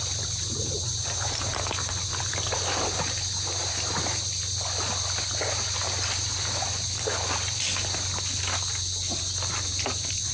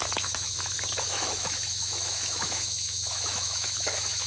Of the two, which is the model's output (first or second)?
second